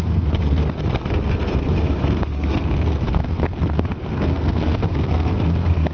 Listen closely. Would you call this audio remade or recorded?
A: remade